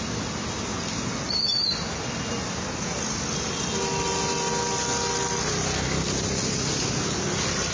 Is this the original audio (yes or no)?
yes